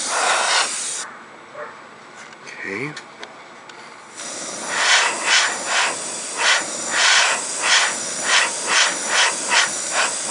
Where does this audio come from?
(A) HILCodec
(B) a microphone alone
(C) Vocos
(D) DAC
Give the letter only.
B